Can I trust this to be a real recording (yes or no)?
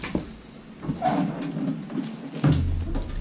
yes